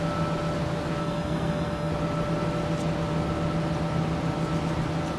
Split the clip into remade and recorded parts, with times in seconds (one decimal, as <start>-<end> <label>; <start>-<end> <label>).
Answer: 0.0-1.0 recorded; 1.0-1.9 remade; 1.9-5.2 recorded